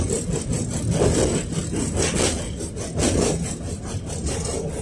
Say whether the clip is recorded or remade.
recorded